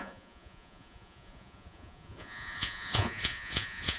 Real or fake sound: fake